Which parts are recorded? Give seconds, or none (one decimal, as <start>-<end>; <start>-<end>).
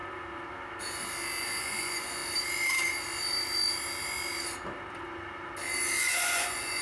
0.0-1.4; 2.2-6.0